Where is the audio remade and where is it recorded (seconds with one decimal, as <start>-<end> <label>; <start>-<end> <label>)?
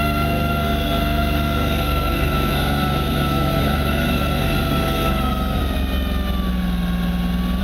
0.0-5.6 remade; 5.6-7.6 recorded